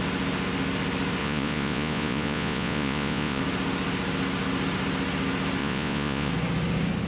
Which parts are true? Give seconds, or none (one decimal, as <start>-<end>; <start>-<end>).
0.0-1.2; 3.4-5.6; 6.3-7.1